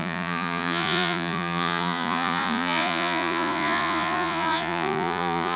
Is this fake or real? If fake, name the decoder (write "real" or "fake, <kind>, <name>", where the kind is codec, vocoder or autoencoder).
fake, vocoder, Vocos